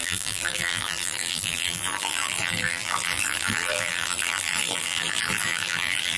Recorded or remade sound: remade